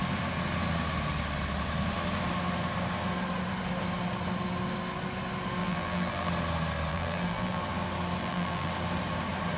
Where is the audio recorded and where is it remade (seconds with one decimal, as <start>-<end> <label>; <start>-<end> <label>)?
0.0-5.6 recorded; 5.6-6.3 remade; 6.3-6.9 recorded; 6.9-7.6 remade; 7.6-8.2 recorded; 8.2-8.7 remade; 8.7-9.6 recorded